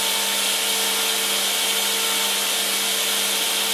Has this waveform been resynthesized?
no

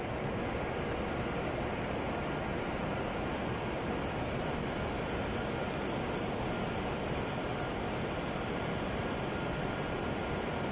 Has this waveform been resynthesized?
no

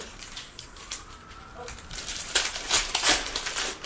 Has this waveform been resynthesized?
yes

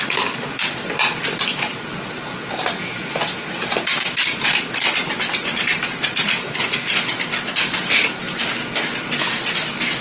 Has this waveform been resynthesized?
no